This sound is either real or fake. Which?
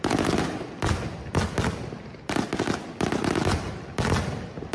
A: real